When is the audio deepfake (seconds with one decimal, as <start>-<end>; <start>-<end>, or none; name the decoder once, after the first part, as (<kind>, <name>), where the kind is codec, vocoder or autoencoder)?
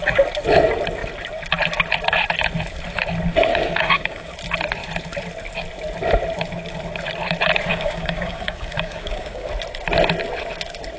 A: 3.5-4.3 (codec, DAC); 7.7-9.5